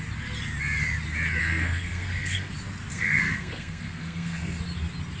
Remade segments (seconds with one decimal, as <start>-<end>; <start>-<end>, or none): 1.4-2.5; 2.9-4.6